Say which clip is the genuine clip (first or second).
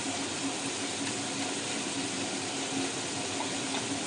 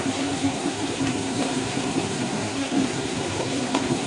first